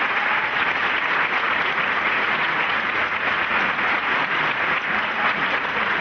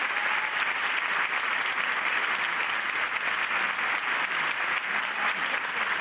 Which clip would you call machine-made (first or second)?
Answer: first